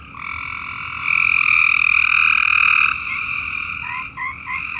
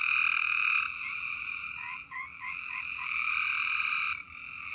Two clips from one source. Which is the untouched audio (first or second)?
first